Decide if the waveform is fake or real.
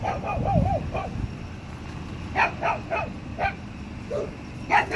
real